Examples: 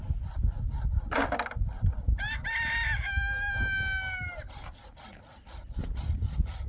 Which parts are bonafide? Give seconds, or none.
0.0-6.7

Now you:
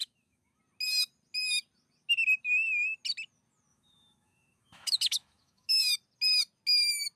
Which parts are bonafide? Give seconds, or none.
0.6-3.7; 5.8-7.2

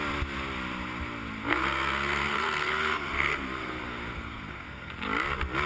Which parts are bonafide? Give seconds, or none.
0.0-1.5; 4.9-5.7

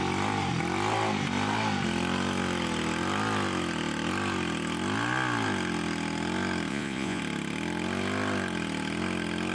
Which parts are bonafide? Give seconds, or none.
0.0-6.7; 7.2-9.5

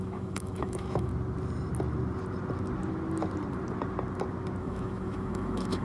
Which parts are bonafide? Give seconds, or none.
1.1-4.6

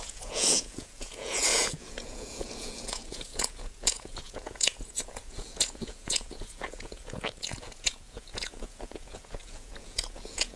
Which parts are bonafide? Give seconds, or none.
none

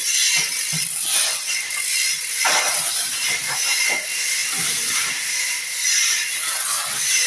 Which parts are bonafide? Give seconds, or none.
0.0-7.3

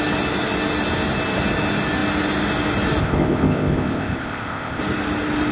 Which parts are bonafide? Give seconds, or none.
0.0-3.0; 4.8-5.5